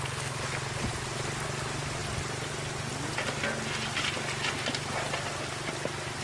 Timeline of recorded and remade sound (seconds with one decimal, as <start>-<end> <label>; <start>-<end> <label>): 0.0-6.2 recorded